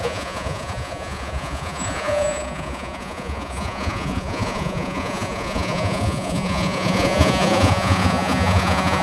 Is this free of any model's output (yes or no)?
no